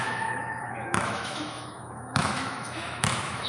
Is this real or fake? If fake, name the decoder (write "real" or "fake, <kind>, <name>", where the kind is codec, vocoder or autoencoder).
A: fake, autoencoder, DAC-VAE